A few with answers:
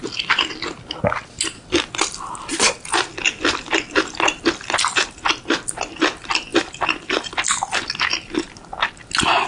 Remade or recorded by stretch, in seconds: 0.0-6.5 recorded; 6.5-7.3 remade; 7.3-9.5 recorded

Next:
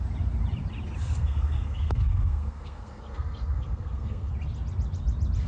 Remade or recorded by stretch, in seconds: 0.0-1.0 recorded; 1.0-4.3 remade; 4.3-5.5 recorded